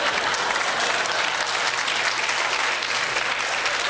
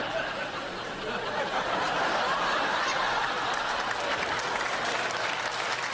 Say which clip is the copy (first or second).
second